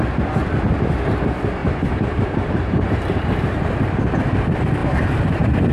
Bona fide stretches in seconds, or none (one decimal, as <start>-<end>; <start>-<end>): 0.0-1.6; 3.3-4.8